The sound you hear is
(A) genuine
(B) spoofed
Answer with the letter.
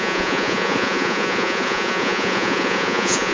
B